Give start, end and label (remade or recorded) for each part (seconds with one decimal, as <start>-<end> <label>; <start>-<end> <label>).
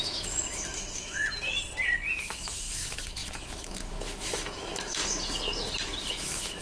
0.0-1.2 remade; 1.2-2.2 recorded; 2.2-5.0 remade; 5.0-6.1 recorded; 6.1-6.6 remade